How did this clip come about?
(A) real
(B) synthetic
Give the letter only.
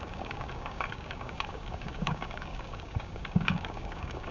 B